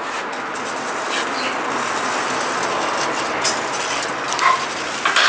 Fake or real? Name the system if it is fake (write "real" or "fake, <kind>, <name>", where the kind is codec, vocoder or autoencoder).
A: real